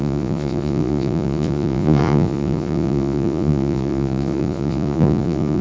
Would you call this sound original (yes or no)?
no